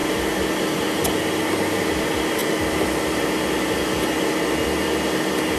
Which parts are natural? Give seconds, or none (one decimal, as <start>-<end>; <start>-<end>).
0.0-5.6